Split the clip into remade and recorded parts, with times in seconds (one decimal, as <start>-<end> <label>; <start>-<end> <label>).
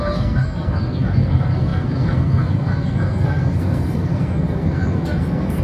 0.0-5.6 remade